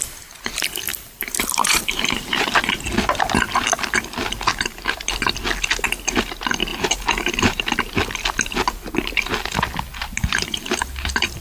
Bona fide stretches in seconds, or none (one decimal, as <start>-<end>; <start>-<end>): 0.0-0.9; 2.5-4.5; 5.1-6.7; 7.6-9.9